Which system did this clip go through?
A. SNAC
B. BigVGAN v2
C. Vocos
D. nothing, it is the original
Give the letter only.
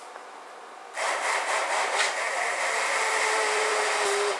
B